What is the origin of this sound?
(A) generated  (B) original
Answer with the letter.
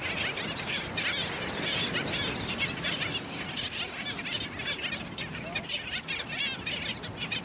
B